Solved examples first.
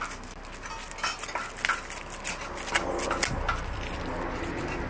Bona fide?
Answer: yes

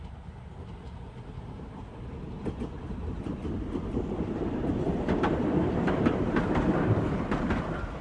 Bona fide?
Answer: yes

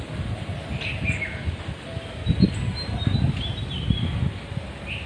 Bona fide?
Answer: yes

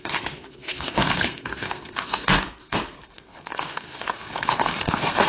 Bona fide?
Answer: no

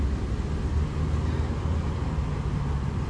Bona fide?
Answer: yes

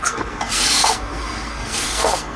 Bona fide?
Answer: no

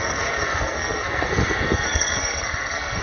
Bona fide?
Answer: no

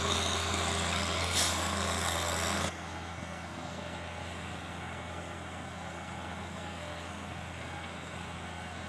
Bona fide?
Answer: no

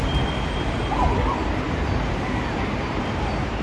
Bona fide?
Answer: yes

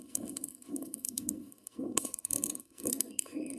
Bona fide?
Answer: no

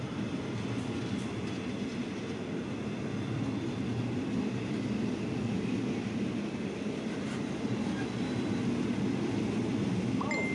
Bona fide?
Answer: yes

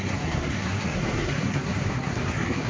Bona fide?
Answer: no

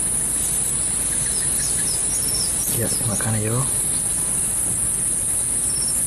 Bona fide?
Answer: yes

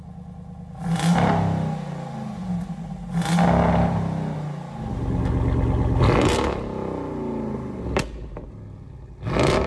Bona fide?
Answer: yes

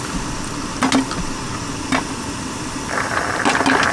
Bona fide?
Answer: yes